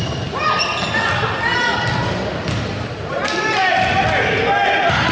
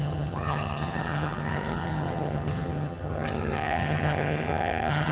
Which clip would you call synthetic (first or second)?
second